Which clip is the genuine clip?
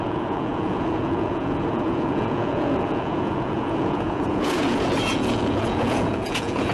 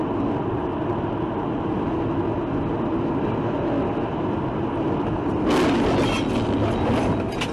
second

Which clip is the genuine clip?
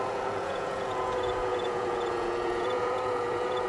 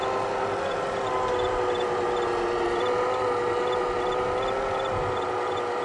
second